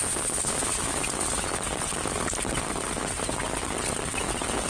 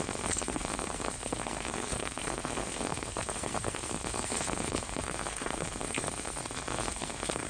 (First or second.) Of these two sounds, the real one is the first